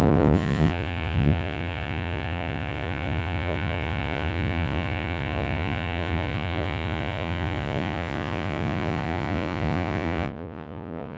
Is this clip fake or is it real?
fake